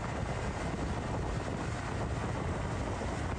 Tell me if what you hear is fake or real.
real